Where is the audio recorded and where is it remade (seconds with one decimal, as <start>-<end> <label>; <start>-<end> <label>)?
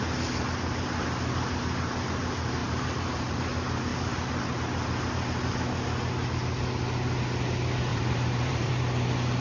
0.0-2.6 recorded; 2.6-3.4 remade; 3.4-7.9 recorded; 7.9-8.7 remade; 8.7-9.4 recorded